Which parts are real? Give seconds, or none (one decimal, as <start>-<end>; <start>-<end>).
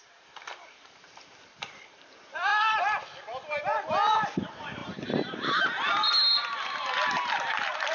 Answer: 2.5-4.1